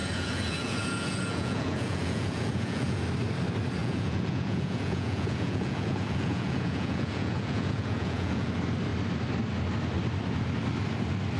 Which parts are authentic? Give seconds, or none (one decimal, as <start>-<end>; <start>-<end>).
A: 3.0-3.8; 8.5-11.4